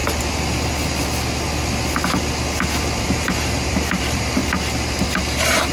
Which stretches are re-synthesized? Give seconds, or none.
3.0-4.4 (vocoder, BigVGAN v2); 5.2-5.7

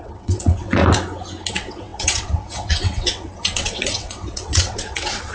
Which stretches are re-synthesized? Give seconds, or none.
0.0-0.8 (vocoder, WaveNeXt); 1.5-5.3

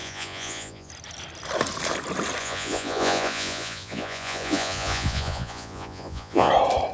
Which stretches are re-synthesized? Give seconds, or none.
0.0-0.9 (vocoder, Vocos); 2.4-6.5